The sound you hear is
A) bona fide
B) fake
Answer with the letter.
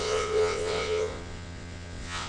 B